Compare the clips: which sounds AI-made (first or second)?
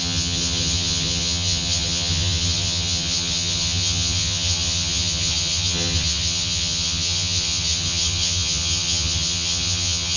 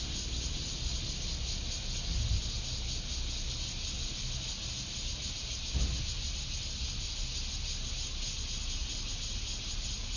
first